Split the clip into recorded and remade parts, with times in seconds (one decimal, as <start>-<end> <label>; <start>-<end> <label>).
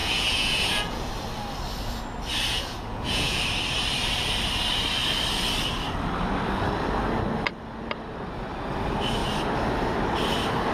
0.0-1.1 remade; 1.1-2.5 recorded; 2.5-3.4 remade; 3.4-10.7 recorded